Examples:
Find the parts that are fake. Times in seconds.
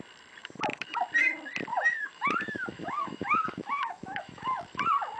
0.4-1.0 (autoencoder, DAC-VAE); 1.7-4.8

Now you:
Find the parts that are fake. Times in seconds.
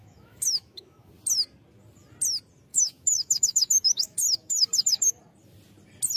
0.0-1.1 (autoencoder, DAC-VAE); 2.7-5.2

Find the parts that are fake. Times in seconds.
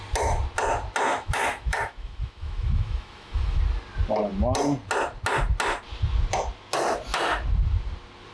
1.1-3.6 (autoencoder, DAC-VAE)